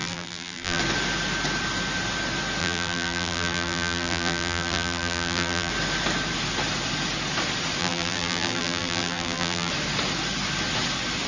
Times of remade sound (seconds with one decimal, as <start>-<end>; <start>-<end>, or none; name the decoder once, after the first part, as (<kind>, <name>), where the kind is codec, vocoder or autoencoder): 0.0-0.8 (vocoder, BigVGAN v2); 2.6-5.7; 7.8-9.7